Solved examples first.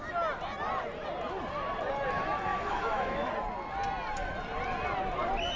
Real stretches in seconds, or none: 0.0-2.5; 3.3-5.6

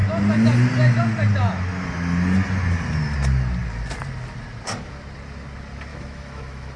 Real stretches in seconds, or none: 0.0-5.9

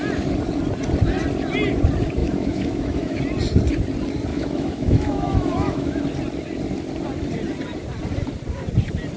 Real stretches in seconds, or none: 0.0-2.2; 3.2-4.3; 6.0-9.2

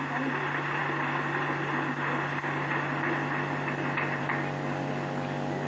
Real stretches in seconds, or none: 0.0-5.7